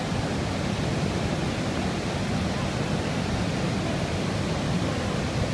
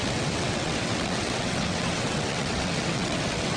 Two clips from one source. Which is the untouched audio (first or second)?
first